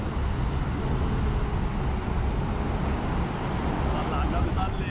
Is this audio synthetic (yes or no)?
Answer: no